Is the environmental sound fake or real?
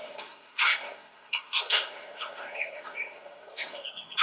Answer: fake